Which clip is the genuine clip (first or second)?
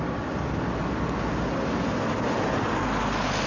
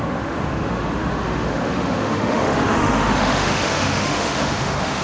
first